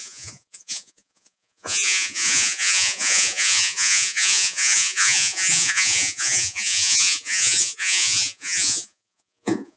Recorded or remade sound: remade